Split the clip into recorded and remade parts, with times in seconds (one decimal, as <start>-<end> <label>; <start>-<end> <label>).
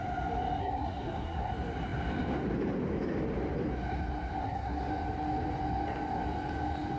0.0-0.6 recorded; 0.6-1.5 remade; 1.5-4.4 recorded; 4.4-4.9 remade; 4.9-7.0 recorded